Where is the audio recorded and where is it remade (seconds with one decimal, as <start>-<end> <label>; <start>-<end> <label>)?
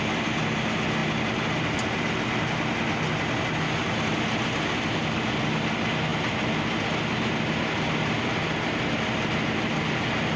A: 0.0-10.4 recorded